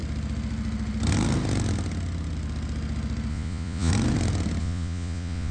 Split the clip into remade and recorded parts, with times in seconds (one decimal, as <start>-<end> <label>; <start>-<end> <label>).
0.0-3.3 recorded; 3.3-3.9 remade; 3.9-4.6 recorded; 4.6-5.5 remade